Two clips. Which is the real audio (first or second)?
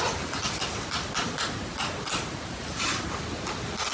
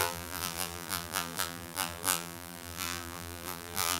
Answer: first